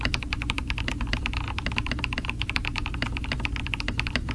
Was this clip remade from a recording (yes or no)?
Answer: yes